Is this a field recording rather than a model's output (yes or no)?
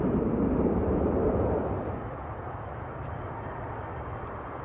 no